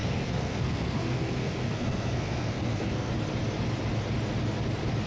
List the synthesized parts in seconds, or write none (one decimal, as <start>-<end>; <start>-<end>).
0.0-3.1